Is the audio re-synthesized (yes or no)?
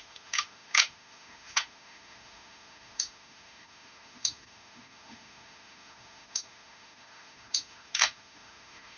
yes